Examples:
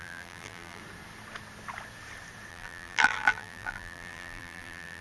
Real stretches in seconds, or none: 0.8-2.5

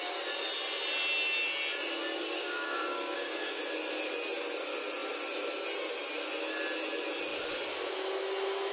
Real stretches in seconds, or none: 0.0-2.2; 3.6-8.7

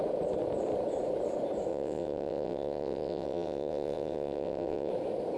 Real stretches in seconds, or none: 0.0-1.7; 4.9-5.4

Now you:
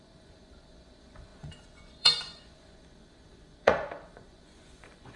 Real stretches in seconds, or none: none

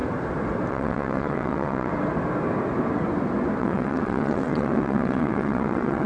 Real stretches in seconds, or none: 0.0-0.7; 1.9-3.6

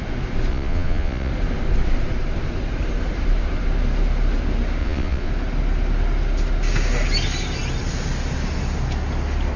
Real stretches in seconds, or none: 0.0-0.5; 1.3-4.8; 5.3-9.6

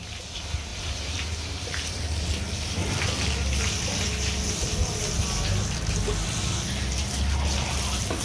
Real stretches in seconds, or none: 0.0-0.7; 2.0-8.2

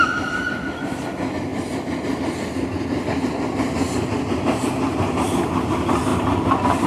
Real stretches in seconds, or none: 0.0-6.9